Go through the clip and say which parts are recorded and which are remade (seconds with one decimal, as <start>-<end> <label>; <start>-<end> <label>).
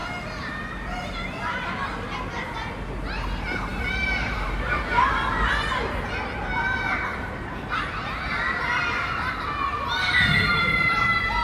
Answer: 0.0-3.7 recorded; 3.7-5.8 remade; 5.8-7.1 recorded; 7.1-11.4 remade